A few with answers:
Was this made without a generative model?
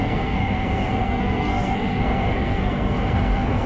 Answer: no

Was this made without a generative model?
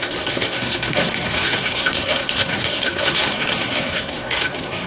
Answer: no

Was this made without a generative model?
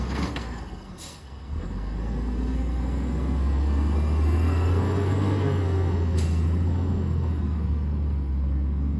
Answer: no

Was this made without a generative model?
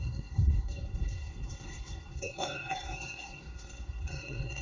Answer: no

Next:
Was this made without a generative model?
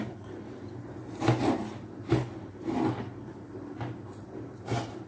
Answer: yes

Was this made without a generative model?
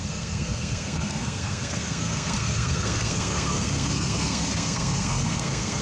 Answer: no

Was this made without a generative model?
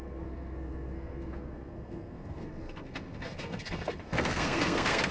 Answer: no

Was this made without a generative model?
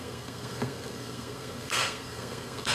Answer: no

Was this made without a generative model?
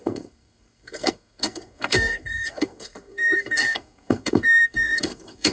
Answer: no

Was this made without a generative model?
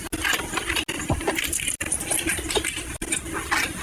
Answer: yes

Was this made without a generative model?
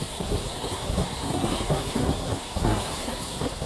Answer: no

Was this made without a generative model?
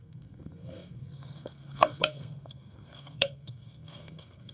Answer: no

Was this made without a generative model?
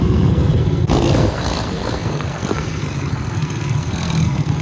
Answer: no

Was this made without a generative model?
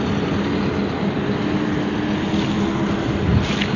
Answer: yes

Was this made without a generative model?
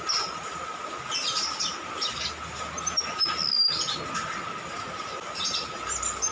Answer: yes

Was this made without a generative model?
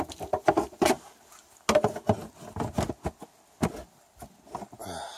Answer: yes